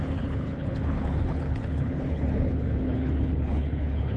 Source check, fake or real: fake